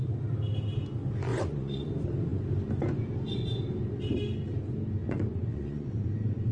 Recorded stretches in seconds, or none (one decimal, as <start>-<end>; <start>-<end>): 0.0-1.3; 1.9-5.0